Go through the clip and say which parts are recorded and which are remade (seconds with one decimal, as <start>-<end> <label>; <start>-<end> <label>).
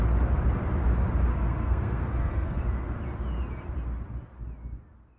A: 0.0-1.3 recorded; 1.3-2.6 remade; 2.6-5.2 recorded